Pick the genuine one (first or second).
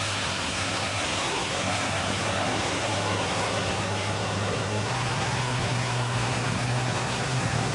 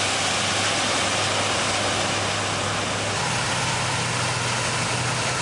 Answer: second